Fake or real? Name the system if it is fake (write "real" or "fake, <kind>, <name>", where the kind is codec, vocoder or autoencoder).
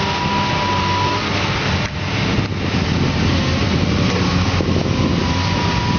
real